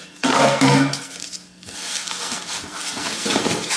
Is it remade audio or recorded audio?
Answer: remade